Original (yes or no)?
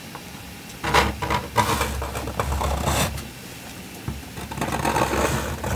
yes